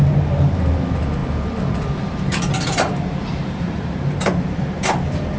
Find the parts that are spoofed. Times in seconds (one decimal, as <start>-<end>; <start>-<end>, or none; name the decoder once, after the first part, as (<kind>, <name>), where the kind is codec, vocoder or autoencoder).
0.0-5.4 (vocoder, BigVGAN v2)

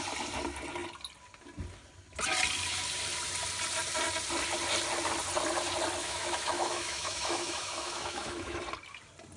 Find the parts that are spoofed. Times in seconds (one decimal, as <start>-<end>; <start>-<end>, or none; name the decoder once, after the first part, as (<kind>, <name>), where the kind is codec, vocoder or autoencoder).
6.0-8.6 (autoencoder, DAC-VAE)